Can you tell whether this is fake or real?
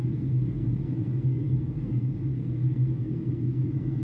fake